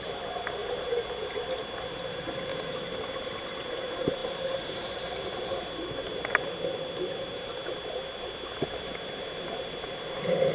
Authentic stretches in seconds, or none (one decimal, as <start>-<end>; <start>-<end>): 0.0-10.5